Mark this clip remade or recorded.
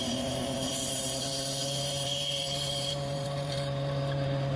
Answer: remade